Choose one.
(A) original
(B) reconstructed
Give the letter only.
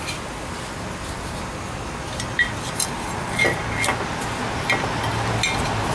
A